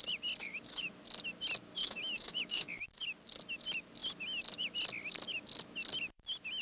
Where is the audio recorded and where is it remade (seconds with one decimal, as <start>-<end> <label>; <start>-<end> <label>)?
0.0-0.4 recorded; 0.4-1.0 remade; 1.0-1.8 recorded; 1.8-2.9 remade; 2.9-6.6 recorded